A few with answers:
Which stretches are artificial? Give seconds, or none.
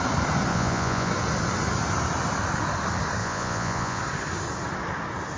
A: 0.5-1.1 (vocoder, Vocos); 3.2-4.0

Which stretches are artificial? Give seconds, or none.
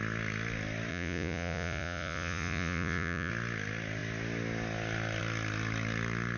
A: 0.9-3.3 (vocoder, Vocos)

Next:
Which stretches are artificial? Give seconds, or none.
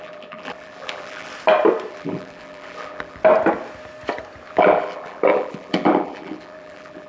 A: 0.0-1.3 (vocoder, BigVGAN v2); 1.9-3.2; 4.5-7.1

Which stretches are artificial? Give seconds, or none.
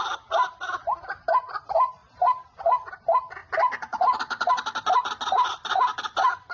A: none